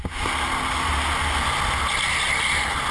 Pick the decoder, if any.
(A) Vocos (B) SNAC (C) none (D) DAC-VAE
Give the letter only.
C